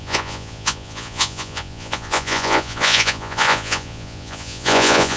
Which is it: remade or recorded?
remade